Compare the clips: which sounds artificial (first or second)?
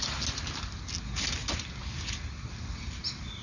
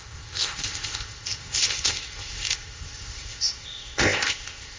second